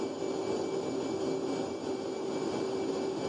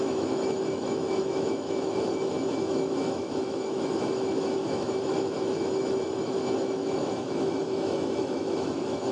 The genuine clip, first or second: first